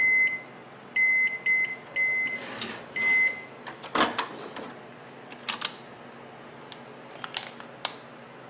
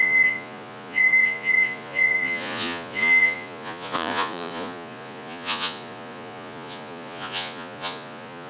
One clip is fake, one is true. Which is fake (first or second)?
second